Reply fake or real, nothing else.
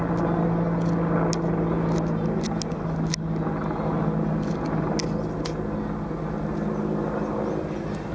real